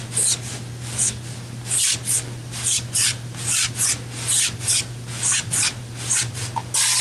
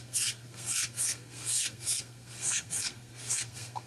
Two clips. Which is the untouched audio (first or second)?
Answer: first